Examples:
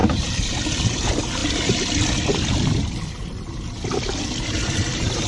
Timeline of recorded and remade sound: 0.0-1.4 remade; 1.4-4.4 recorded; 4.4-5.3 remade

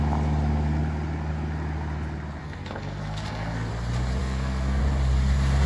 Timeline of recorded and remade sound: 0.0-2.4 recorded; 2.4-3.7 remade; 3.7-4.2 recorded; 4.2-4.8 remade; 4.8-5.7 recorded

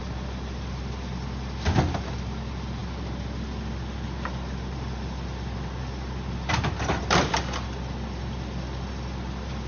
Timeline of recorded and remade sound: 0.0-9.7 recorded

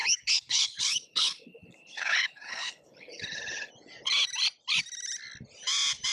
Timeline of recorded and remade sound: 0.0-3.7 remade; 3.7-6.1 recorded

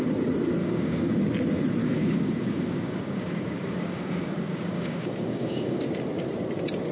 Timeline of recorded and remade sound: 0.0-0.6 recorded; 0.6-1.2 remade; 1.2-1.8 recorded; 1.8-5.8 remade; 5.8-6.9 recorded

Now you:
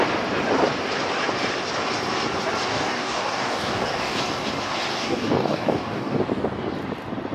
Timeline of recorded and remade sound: 0.0-2.7 recorded; 2.7-4.2 remade; 4.2-4.9 recorded; 4.9-6.2 remade; 6.2-7.3 recorded

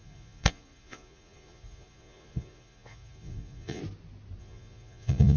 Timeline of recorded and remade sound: 0.0-3.8 remade; 3.8-4.4 recorded; 4.4-5.4 remade